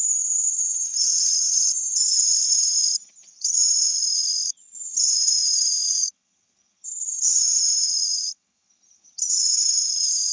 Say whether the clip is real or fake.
fake